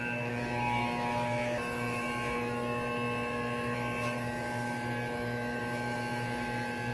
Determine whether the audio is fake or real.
fake